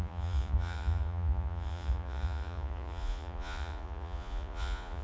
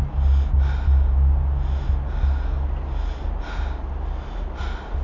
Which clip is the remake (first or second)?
first